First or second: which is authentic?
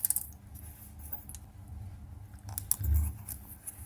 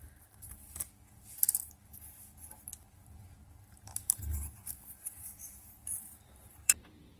first